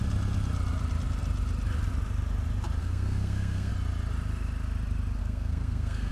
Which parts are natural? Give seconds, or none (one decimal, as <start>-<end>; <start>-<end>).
0.0-2.8; 3.7-5.2